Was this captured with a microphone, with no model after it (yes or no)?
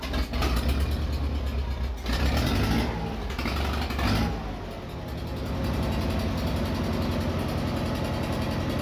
yes